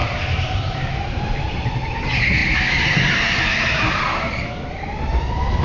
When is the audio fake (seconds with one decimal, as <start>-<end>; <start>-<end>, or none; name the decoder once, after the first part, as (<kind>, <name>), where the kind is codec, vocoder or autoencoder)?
0.0-1.7 (vocoder, BigVGAN v2)

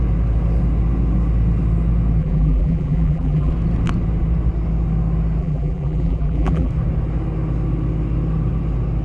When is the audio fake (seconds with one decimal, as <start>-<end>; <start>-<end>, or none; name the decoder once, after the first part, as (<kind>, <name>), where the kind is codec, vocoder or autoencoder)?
2.2-3.5 (vocoder, BigVGAN v2); 5.4-6.7

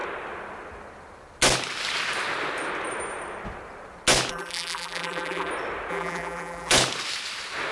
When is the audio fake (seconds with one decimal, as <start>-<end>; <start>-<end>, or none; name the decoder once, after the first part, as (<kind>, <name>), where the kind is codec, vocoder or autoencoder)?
4.3-5.5 (vocoder, BigVGAN v2); 5.9-6.7

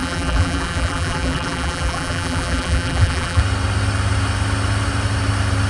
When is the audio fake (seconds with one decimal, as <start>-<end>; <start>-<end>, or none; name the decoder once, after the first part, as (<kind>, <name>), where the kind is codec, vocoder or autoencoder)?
0.0-3.4 (vocoder, BigVGAN v2)

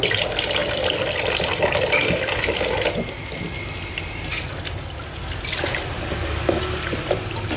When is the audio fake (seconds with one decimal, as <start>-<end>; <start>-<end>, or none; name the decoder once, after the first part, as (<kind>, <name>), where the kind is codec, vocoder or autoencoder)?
5.2-6.6 (vocoder, BigVGAN v2)

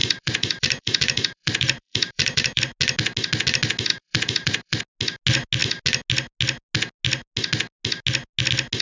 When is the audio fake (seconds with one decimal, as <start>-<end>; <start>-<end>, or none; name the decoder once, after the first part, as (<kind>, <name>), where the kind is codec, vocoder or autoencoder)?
0.0-2.6 (vocoder, BigVGAN v2); 3.9-4.8

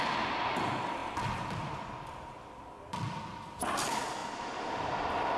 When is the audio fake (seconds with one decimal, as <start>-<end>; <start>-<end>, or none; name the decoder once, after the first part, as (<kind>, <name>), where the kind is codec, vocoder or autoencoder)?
none